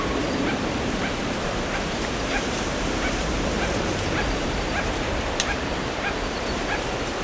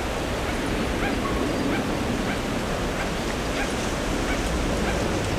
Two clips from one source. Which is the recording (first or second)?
second